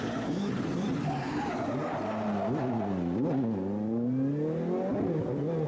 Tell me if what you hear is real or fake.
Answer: real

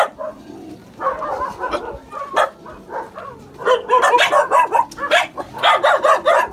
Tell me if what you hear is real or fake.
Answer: real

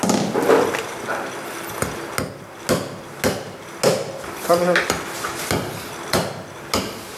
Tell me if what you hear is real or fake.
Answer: real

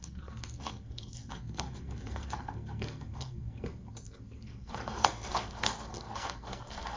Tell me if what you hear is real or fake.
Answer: fake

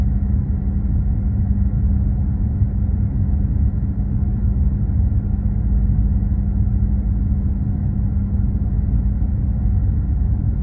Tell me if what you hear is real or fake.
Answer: real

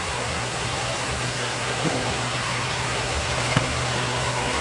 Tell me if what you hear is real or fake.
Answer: fake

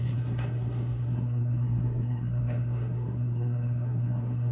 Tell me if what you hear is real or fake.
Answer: fake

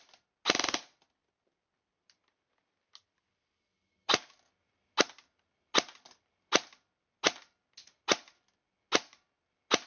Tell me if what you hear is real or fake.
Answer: real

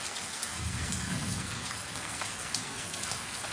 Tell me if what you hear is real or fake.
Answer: fake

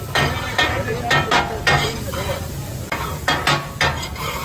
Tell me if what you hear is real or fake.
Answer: real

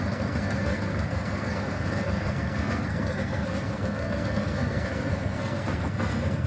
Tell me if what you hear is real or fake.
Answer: fake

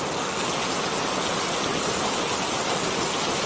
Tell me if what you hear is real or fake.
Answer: real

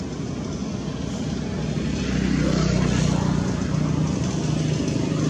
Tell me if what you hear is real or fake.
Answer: real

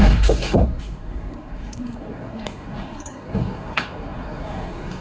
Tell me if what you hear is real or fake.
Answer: fake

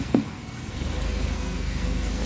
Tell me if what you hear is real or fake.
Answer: fake